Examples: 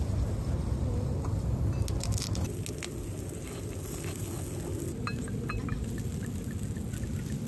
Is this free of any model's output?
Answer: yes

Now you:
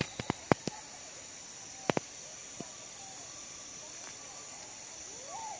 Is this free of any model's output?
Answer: yes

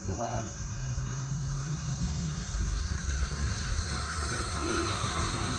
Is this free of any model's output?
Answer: no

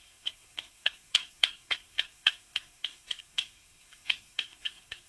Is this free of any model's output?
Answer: no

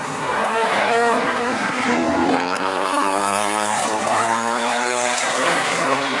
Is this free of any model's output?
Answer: no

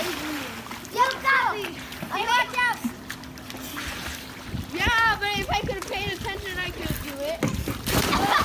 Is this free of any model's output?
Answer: yes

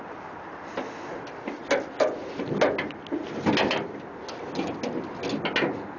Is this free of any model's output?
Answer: yes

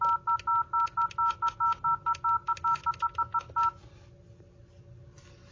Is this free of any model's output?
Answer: yes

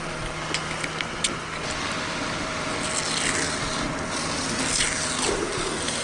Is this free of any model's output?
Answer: yes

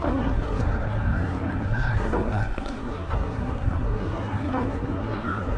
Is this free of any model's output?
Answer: no